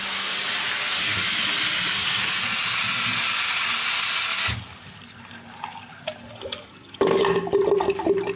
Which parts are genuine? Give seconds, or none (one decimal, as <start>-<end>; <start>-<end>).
0.0-8.4